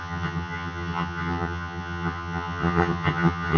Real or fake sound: fake